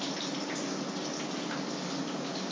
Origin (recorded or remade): recorded